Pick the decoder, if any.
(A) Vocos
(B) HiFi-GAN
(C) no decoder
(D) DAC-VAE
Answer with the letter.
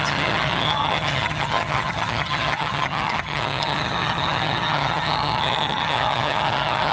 B